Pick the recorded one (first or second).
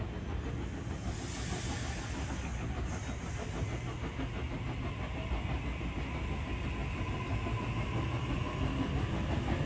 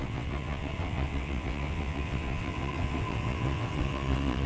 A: first